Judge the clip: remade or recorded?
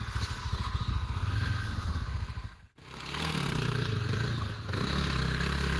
remade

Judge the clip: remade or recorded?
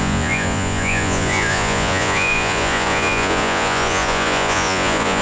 remade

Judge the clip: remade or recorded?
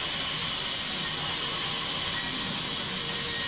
recorded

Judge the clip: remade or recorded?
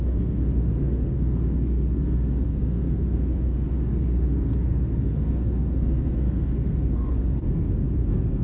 remade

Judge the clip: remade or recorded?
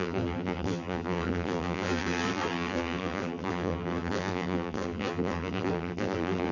remade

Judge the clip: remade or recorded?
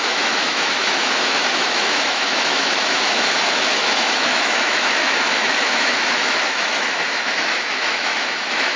remade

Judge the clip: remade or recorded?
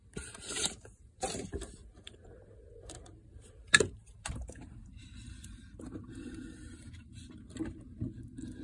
remade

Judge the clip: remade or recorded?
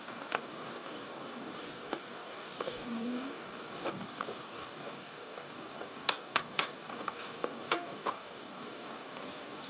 remade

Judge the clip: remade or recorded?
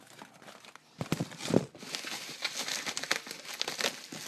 recorded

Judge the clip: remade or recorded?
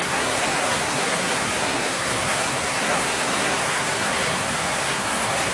remade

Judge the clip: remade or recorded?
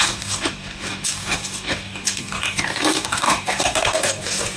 remade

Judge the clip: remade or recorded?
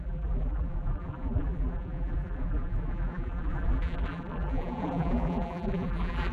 remade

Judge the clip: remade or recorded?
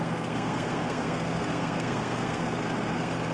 remade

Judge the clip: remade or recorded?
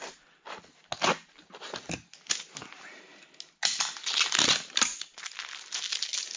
recorded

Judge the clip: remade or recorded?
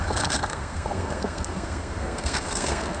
remade